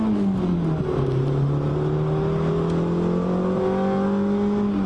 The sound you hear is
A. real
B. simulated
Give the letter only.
A